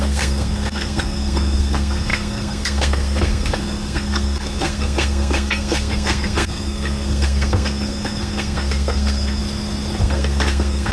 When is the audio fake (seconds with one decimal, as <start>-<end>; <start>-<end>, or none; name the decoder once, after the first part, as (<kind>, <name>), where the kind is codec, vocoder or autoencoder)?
0.0-9.4 (codec, SNAC); 10.0-10.9